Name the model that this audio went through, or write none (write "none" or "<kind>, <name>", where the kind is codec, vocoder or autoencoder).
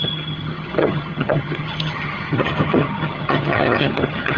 vocoder, HiFi-GAN